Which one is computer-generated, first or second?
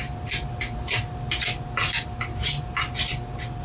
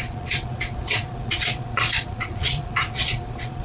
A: second